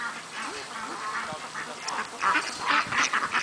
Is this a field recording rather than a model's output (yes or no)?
yes